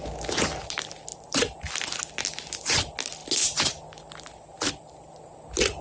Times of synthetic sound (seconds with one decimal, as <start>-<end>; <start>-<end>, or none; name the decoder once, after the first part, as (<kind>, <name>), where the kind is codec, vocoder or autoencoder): none